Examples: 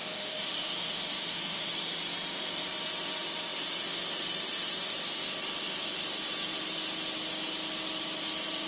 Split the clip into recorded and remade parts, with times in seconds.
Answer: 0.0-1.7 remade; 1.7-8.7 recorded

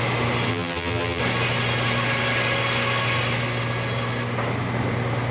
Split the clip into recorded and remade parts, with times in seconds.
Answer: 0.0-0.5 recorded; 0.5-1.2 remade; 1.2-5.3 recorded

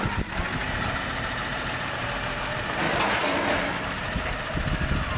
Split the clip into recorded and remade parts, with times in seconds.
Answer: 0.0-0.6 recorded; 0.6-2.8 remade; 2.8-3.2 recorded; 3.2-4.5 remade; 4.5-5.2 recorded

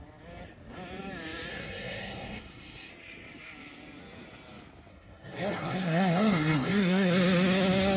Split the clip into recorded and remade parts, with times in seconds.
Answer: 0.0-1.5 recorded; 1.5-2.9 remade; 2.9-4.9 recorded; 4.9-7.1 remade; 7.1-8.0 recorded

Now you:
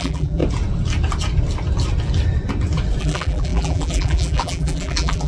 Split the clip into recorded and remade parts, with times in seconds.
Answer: 0.0-0.4 remade; 0.4-3.0 recorded; 3.0-5.3 remade

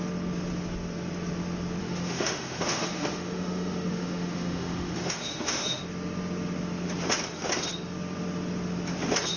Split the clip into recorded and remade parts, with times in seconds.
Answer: 0.0-1.8 recorded; 1.8-5.8 remade; 5.8-9.4 recorded